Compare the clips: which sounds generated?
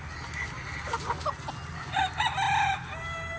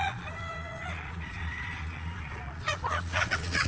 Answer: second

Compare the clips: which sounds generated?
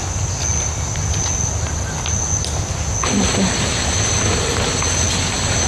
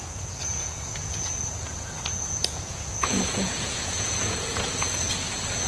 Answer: second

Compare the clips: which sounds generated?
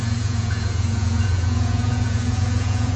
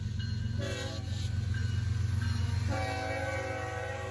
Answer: first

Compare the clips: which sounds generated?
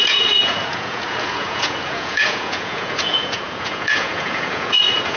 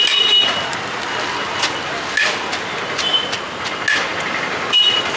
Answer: first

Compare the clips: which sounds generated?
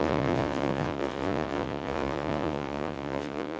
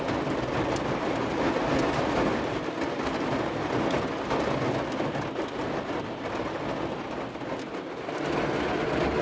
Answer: first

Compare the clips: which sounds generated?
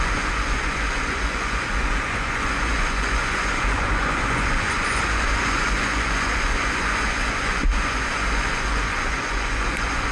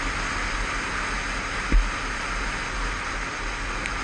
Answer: first